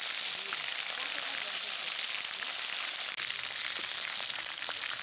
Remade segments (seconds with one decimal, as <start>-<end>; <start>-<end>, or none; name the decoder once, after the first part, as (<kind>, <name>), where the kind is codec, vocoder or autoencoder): none